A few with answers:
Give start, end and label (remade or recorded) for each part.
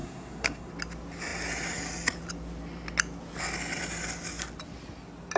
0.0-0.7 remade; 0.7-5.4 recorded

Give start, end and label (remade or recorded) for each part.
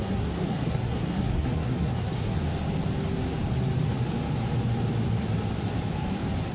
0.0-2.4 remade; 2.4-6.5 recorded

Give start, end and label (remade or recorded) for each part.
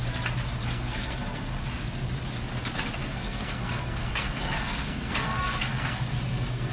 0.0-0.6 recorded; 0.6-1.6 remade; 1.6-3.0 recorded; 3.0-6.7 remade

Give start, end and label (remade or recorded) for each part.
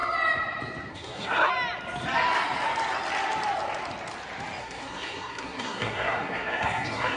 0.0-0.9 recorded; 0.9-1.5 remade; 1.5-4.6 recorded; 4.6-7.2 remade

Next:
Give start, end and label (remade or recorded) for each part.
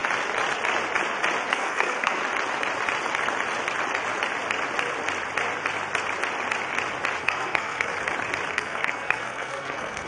0.0-1.5 recorded; 1.5-2.2 remade; 2.2-7.2 recorded; 7.2-7.9 remade; 7.9-8.5 recorded; 8.5-10.1 remade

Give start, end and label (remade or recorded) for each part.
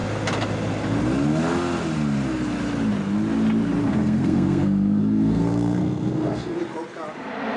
0.0-3.8 recorded; 3.8-6.6 remade; 6.6-7.6 recorded